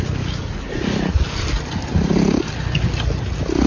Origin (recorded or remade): recorded